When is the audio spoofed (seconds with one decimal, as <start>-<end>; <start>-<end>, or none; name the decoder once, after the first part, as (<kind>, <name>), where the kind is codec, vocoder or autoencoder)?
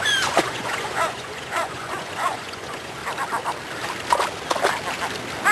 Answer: 0.0-3.0 (vocoder, Vocos)